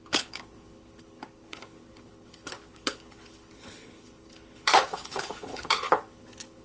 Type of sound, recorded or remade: remade